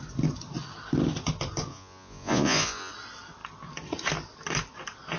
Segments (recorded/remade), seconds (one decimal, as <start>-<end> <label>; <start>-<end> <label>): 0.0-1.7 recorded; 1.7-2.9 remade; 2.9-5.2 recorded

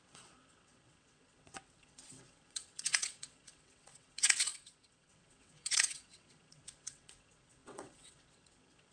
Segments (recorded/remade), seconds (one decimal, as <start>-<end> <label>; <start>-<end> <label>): 0.0-8.9 remade

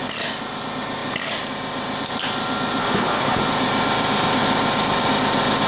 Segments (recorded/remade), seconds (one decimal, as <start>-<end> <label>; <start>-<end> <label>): 0.0-2.8 recorded; 2.8-3.4 remade; 3.4-5.7 recorded

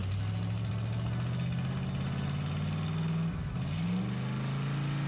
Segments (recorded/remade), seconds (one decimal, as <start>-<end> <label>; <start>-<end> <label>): 0.0-5.1 recorded

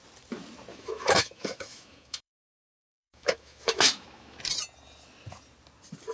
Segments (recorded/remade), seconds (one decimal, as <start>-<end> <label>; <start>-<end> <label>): 0.0-0.7 recorded; 0.7-4.4 remade; 4.4-6.1 recorded

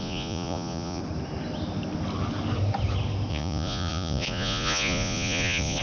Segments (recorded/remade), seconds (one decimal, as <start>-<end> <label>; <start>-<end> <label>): 0.0-1.0 remade; 1.0-3.3 recorded; 3.3-5.8 remade